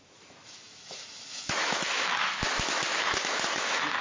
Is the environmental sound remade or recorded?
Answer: remade